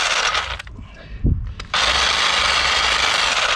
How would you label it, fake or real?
real